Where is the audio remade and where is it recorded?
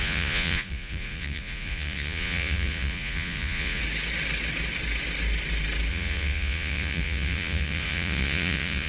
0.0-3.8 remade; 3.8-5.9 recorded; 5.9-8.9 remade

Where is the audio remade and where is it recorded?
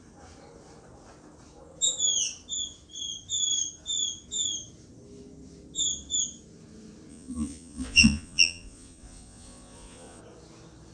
0.0-7.1 recorded; 7.1-10.2 remade; 10.2-10.9 recorded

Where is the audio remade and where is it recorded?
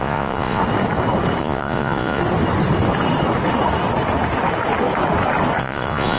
0.0-0.6 remade; 0.6-1.4 recorded; 1.4-2.2 remade; 2.2-5.6 recorded; 5.6-6.2 remade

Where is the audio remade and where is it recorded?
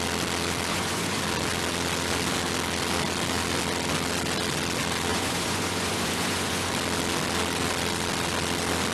0.0-0.7 recorded; 0.7-1.2 remade; 1.2-5.1 recorded; 5.1-6.7 remade; 6.7-8.9 recorded